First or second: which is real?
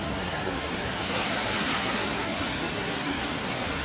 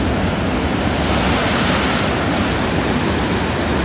second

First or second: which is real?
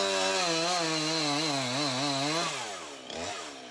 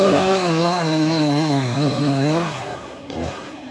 first